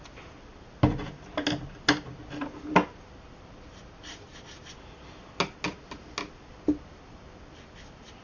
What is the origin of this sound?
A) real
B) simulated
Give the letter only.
A